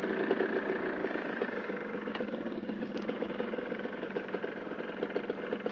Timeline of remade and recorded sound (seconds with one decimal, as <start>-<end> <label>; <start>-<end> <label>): 0.0-1.0 recorded; 1.0-4.4 remade; 4.4-5.7 recorded